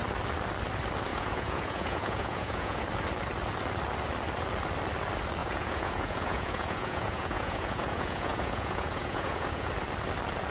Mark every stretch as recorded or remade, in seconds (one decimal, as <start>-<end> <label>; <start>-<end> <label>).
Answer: 0.0-1.1 recorded; 1.1-2.8 remade; 2.8-5.4 recorded; 5.4-9.7 remade; 9.7-10.5 recorded